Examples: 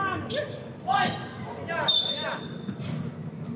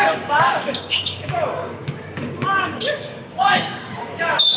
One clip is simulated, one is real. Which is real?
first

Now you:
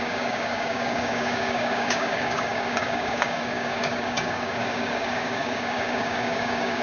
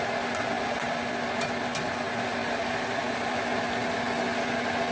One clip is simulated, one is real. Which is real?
second